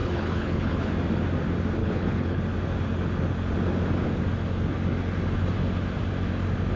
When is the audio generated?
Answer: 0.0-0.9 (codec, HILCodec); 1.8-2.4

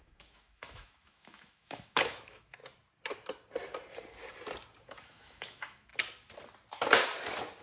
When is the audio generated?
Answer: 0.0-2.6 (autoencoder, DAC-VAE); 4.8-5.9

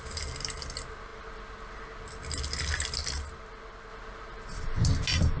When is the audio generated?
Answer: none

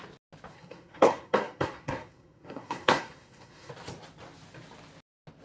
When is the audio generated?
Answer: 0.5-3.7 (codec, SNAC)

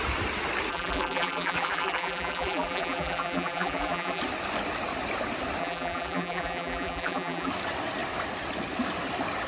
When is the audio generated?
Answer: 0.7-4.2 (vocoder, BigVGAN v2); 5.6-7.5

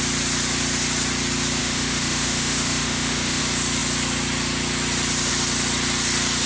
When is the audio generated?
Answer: 1.6-3.4 (autoencoder, DAC-VAE)

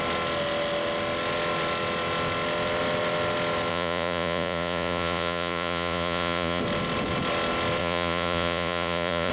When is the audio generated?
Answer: 3.7-6.6 (vocoder, Vocos); 7.8-9.3